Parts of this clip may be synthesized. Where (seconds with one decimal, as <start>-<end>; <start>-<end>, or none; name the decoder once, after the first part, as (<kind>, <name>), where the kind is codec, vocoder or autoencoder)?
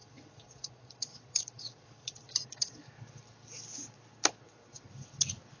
0.0-2.8 (vocoder, Vocos)